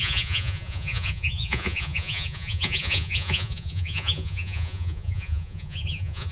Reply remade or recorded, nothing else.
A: remade